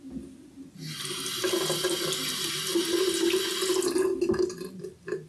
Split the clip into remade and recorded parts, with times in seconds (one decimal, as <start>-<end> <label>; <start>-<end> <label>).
0.0-5.3 recorded